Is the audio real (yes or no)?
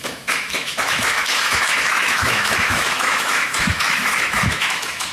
no